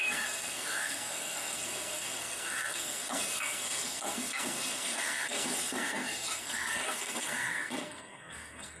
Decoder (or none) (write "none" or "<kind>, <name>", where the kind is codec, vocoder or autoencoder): codec, SNAC